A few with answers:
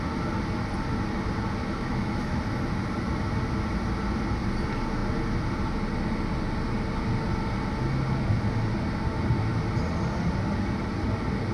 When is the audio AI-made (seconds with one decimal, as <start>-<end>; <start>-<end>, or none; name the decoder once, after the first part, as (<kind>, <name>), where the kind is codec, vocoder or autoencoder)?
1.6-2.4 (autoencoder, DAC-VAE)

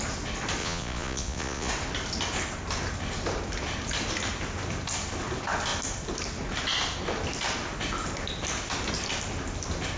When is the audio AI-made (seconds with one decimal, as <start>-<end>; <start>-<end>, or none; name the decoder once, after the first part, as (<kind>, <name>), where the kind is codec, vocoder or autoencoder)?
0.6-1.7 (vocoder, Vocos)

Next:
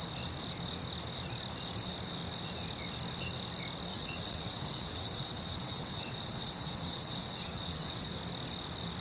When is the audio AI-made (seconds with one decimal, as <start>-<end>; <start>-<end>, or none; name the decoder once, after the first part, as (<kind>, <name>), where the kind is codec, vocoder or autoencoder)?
3.9-8.1 (vocoder, WaveNeXt)

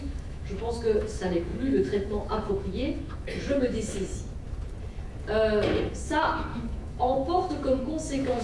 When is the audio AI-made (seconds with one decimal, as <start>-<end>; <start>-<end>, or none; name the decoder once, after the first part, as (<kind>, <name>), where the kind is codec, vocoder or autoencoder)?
0.0-4.1 (autoencoder, DAC-VAE); 5.9-8.4

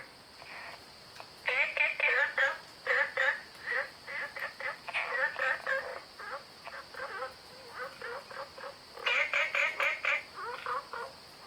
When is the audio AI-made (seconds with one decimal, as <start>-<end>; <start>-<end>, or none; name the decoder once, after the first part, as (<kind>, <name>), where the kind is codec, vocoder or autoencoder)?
3.4-3.9 (vocoder, BigVGAN v2)

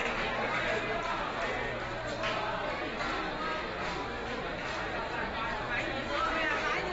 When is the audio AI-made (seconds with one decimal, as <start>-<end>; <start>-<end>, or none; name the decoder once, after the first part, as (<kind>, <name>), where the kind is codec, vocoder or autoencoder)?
4.2-5.8 (vocoder, BigVGAN v2)